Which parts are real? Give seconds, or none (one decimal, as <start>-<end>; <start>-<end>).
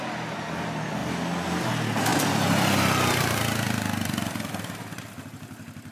0.0-2.1